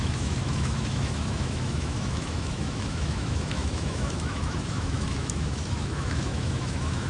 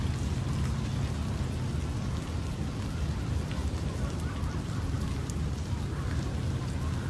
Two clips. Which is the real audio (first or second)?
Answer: second